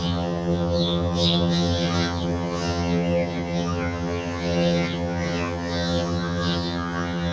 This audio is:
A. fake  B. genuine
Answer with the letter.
A